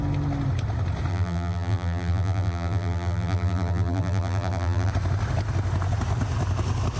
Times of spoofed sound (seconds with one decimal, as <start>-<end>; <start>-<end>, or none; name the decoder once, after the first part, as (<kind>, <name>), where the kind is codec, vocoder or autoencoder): 1.1-4.9 (vocoder, BigVGAN v2)